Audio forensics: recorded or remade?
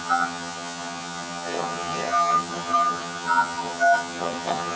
remade